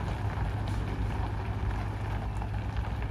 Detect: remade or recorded recorded